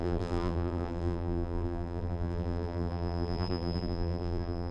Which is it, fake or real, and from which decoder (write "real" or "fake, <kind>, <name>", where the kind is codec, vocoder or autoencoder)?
fake, vocoder, BigVGAN v2